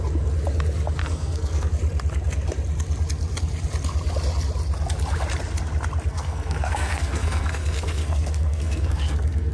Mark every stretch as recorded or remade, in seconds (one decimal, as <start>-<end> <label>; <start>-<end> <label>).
0.0-1.0 recorded; 1.0-1.7 remade; 1.7-6.1 recorded; 6.1-9.5 remade